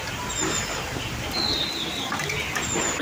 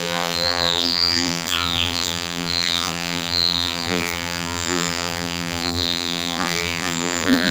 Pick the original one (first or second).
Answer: first